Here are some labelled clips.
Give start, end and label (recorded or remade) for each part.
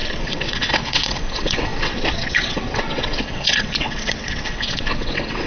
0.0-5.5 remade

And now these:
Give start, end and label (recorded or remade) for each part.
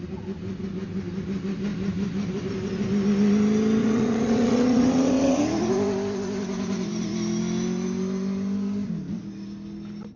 0.0-3.8 recorded; 3.8-5.4 remade; 5.4-10.2 recorded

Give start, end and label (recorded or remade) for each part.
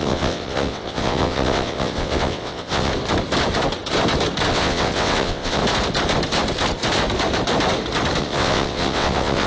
0.0-2.9 remade; 2.9-4.5 recorded; 4.5-5.6 remade; 5.6-8.2 recorded; 8.2-9.5 remade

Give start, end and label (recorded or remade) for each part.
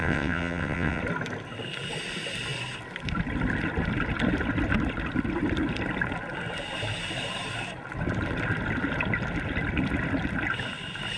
0.0-1.0 remade; 1.0-11.2 recorded